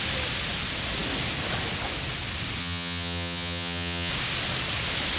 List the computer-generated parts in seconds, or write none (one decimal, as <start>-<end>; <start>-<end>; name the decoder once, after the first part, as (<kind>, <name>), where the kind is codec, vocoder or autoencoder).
2.6-4.1 (vocoder, HiFi-GAN)